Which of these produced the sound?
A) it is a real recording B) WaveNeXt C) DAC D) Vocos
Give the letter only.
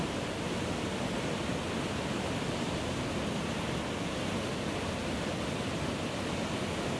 A